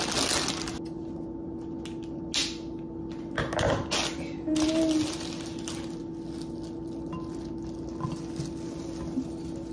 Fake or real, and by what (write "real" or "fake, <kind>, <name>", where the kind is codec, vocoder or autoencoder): real